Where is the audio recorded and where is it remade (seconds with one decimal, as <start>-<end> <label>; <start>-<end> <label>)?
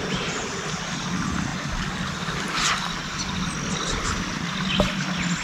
0.0-5.4 recorded